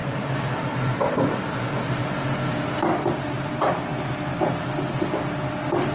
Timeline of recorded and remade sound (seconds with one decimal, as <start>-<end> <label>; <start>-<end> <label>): 0.0-2.0 remade; 2.0-2.5 recorded; 2.5-3.7 remade; 3.7-5.9 recorded